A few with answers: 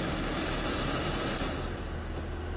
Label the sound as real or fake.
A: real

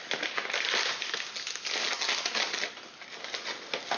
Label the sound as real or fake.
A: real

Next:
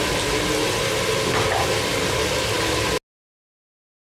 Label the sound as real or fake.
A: real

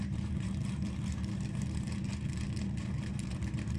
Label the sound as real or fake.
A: fake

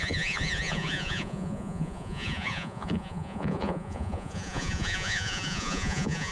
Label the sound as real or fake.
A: fake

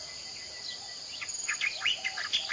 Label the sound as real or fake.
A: real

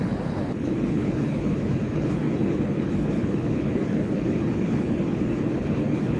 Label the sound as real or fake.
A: fake